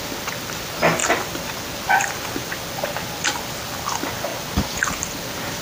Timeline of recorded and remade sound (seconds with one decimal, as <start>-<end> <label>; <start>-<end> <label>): 0.0-5.6 recorded